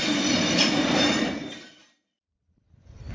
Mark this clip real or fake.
fake